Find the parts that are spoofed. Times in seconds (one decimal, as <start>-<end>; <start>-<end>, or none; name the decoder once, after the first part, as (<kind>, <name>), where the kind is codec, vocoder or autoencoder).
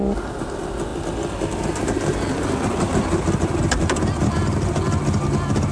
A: none